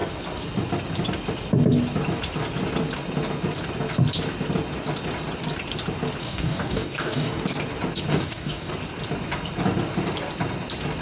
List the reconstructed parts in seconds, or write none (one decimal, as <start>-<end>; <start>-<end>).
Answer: 6.2-7.4; 8.1-8.7